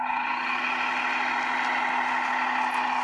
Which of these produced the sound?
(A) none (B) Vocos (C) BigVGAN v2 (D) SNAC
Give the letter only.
A